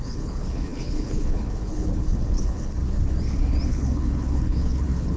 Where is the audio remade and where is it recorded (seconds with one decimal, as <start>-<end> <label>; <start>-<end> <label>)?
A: 0.0-2.8 remade; 2.8-3.7 recorded; 3.7-5.2 remade